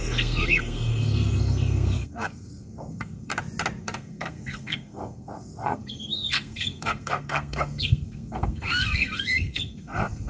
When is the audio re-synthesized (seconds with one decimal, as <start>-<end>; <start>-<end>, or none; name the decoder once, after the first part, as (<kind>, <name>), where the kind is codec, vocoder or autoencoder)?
0.0-3.3 (codec, SNAC); 3.8-10.3